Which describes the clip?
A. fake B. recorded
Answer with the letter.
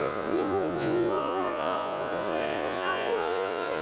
A